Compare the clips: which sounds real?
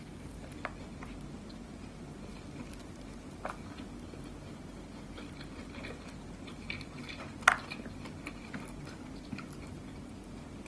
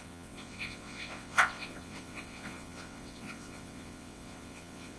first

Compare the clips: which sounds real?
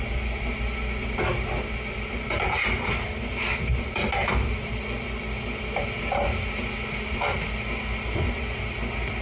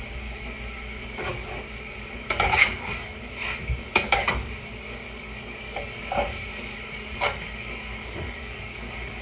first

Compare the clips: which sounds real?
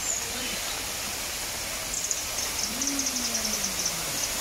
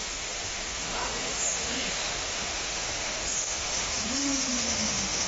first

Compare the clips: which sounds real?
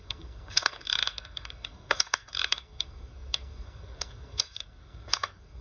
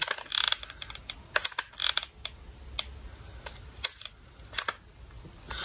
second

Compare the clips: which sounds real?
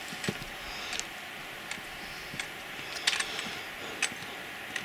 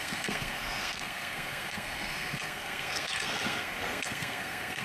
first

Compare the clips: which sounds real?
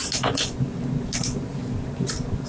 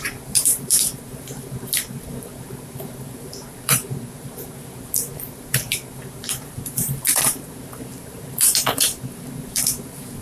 first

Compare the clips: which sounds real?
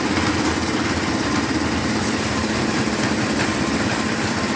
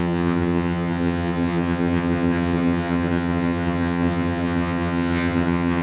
first